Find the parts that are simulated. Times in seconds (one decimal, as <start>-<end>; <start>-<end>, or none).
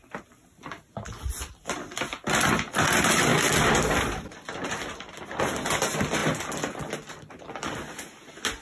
none